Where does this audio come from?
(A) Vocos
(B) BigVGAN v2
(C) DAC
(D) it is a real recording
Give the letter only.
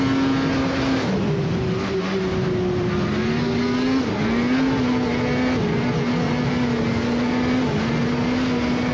D